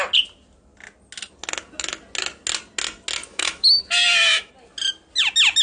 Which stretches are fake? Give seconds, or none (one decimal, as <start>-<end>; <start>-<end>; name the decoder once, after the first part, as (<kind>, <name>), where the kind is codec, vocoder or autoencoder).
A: 3.3-4.5 (autoencoder, DAC-VAE)